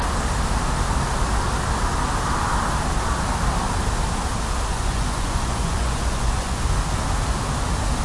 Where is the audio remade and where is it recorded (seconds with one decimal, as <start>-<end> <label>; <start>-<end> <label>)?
0.0-4.7 recorded; 4.7-6.6 remade; 6.6-8.0 recorded